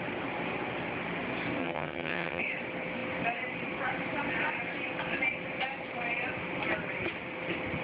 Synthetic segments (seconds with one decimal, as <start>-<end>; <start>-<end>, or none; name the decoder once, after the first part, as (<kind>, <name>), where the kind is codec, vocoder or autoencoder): 1.6-2.4 (vocoder, HiFi-GAN)